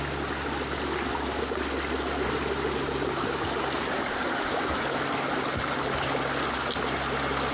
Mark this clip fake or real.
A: real